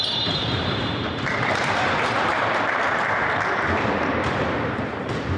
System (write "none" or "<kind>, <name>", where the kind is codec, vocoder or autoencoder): vocoder, BigVGAN v2